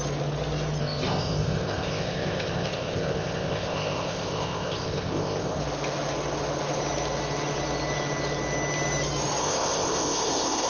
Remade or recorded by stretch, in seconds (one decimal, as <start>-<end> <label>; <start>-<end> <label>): 0.0-0.8 recorded; 0.8-5.6 remade; 5.6-9.4 recorded; 9.4-10.7 remade